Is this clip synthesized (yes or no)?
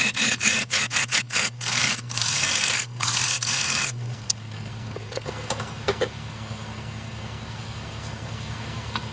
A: yes